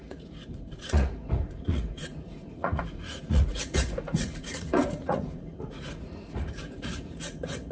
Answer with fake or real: fake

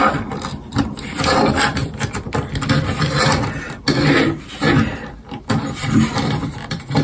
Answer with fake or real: real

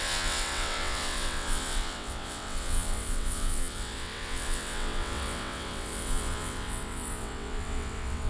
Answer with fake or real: fake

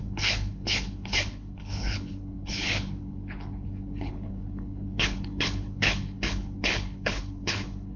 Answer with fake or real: fake